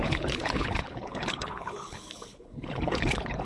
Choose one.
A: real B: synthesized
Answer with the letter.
B